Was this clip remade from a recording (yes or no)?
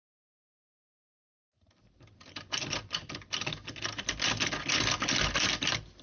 no